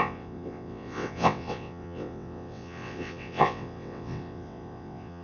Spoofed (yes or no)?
yes